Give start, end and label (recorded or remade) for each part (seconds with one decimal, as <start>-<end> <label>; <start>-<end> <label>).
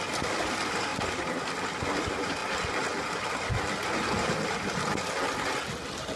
0.0-0.9 recorded; 0.9-1.4 remade; 1.4-6.2 recorded